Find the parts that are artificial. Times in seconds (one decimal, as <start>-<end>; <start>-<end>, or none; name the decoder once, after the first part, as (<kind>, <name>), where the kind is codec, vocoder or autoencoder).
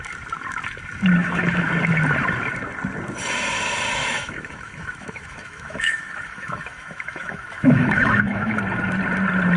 1.2-1.7 (autoencoder, DAC-VAE); 4.0-8.6